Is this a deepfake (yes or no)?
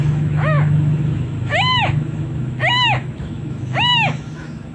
yes